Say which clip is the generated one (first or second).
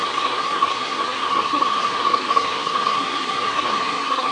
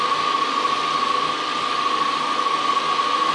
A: first